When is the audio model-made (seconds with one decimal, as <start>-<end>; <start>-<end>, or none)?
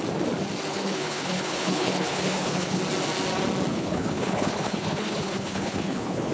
0.7-2.8; 3.7-6.3